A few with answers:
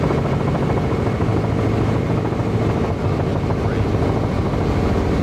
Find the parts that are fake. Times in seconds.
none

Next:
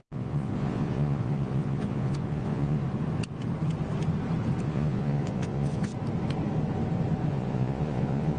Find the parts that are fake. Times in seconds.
0.0-2.8 (vocoder, Vocos); 4.6-5.9; 7.3-8.4